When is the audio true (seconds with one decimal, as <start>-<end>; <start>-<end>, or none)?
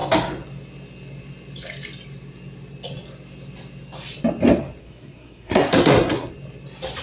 0.0-4.8; 6.3-7.0